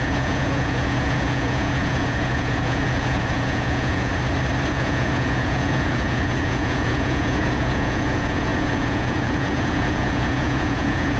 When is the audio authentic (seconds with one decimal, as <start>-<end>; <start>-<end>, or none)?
4.1-4.7